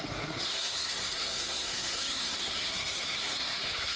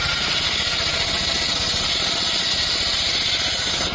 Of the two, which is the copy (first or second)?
first